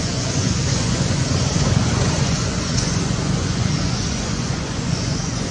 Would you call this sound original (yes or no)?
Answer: no